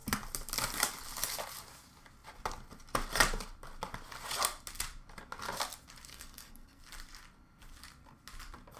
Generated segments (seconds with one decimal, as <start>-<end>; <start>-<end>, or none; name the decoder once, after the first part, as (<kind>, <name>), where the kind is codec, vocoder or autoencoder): 6.1-6.8 (codec, SNAC)